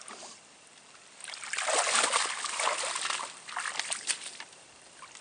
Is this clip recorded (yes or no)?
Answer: yes